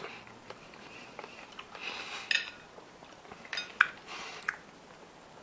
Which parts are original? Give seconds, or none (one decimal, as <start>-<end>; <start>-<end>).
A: 1.8-5.0